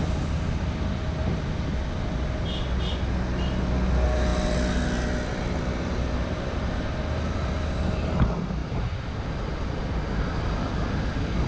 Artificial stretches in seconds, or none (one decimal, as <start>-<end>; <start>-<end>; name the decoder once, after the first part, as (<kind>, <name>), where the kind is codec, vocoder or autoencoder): none